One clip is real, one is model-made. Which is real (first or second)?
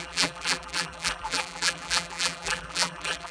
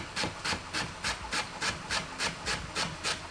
second